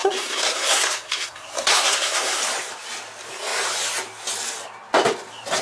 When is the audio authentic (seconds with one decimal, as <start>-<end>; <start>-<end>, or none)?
2.4-5.6